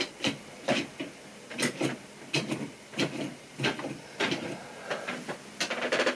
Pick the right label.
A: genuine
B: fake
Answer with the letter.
A